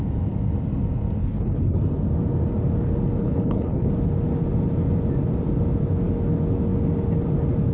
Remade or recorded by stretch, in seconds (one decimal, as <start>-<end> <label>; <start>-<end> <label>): 0.0-1.2 recorded; 1.2-1.8 remade; 1.8-3.2 recorded; 3.2-3.9 remade; 3.9-7.7 recorded